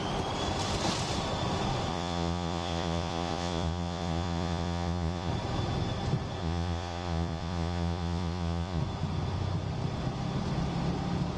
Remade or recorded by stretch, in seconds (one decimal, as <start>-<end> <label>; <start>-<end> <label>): 0.0-1.9 recorded; 1.9-5.3 remade; 5.3-6.4 recorded; 6.4-8.8 remade; 8.8-11.4 recorded